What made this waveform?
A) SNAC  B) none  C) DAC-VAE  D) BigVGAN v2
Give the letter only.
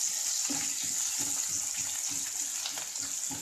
B